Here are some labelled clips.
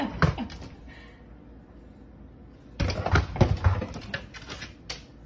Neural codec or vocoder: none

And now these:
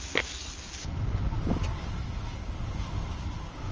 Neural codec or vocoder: none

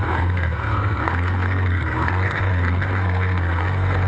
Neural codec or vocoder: codec, SNAC